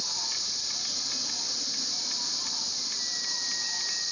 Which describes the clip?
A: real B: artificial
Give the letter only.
A